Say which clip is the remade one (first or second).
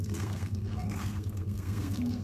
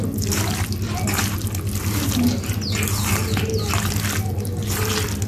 first